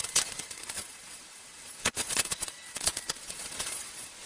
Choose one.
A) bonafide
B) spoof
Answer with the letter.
B